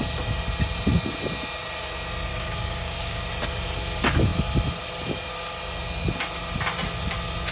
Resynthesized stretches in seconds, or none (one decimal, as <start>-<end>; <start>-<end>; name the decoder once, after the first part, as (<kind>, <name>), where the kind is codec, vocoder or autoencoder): 2.3-3.2 (codec, DAC)